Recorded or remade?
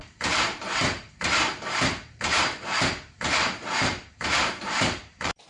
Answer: remade